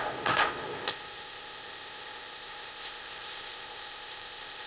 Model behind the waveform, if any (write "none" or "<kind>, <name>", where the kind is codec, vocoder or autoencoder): codec, ZipCodec